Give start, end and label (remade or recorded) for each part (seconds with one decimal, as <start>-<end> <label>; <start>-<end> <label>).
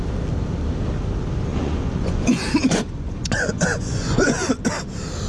0.0-1.5 recorded; 1.5-4.5 remade; 4.5-5.3 recorded